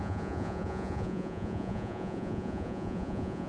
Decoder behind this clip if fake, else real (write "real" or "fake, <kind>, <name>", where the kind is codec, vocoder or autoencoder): fake, vocoder, Vocos